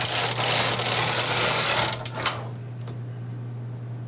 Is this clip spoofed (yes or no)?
no